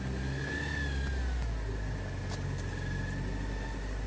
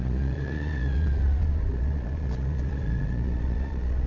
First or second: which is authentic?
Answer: first